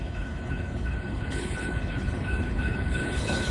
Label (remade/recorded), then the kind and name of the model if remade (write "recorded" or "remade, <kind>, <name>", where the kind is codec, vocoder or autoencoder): remade, codec, HILCodec